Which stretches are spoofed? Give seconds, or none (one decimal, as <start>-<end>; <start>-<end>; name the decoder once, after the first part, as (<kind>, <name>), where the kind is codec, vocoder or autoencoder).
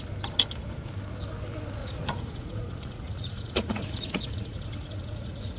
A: 1.8-5.6 (vocoder, Vocos)